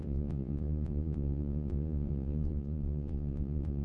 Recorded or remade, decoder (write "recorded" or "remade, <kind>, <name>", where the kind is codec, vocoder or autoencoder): remade, vocoder, Vocos